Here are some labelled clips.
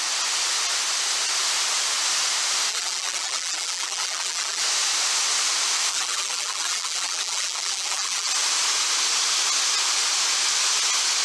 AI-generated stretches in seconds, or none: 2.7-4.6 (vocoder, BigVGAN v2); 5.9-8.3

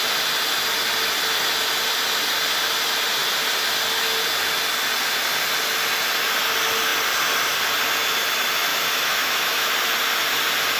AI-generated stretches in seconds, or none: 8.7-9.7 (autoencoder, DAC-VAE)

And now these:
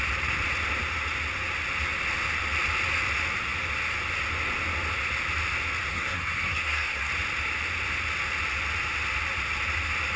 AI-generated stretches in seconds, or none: 5.9-7.1 (codec, SNAC)

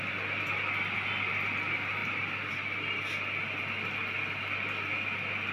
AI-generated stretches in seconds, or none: 2.0-2.5 (vocoder, BigVGAN v2)